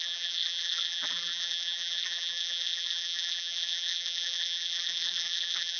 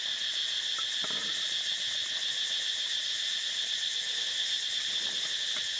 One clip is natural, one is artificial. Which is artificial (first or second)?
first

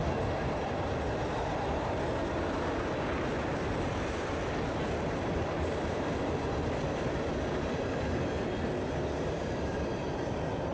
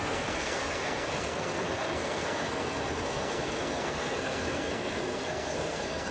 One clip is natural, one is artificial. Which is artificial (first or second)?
second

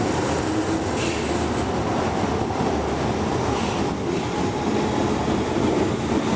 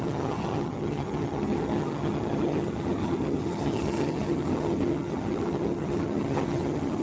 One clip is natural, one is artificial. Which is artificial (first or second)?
second